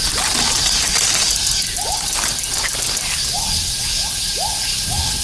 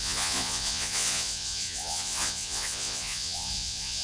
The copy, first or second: second